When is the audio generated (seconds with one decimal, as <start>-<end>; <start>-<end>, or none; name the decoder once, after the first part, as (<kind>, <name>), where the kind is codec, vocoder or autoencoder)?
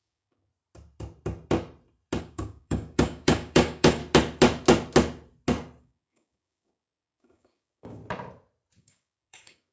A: 0.0-0.5 (codec, DAC); 2.2-4.0; 5.8-8.0; 8.8-9.7